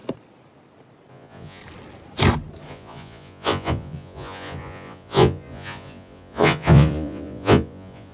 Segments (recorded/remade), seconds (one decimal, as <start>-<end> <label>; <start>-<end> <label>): 0.0-1.1 recorded; 1.1-1.6 remade; 1.6-2.7 recorded; 2.7-8.1 remade